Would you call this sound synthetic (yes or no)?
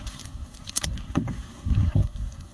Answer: yes